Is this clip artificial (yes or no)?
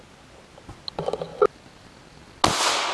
no